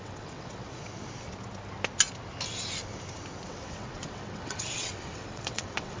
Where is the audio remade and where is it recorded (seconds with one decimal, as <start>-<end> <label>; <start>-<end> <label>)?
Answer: 0.0-0.8 remade; 0.8-3.5 recorded; 3.5-6.0 remade